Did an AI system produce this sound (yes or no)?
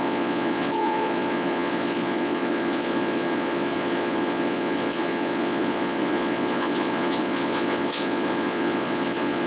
yes